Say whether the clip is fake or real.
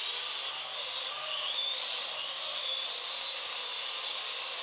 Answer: real